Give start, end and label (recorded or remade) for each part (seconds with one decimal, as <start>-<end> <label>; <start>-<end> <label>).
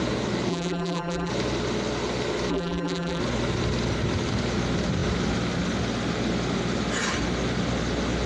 0.0-0.5 recorded; 0.5-1.3 remade; 1.3-2.5 recorded; 2.5-3.2 remade; 3.2-8.3 recorded